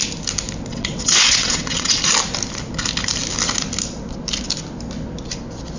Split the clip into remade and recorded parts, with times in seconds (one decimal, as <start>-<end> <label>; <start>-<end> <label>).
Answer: 0.0-0.7 recorded; 0.7-2.0 remade; 2.0-5.8 recorded